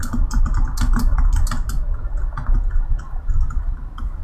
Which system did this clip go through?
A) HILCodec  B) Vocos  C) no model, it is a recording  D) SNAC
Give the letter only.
C